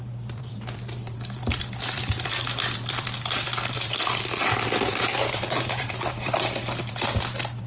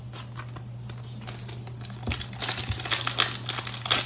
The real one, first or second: second